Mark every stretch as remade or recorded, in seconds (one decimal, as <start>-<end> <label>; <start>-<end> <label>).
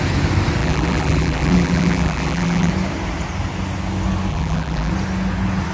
0.0-0.6 recorded; 0.6-2.7 remade; 2.7-4.3 recorded; 4.3-4.9 remade; 4.9-5.7 recorded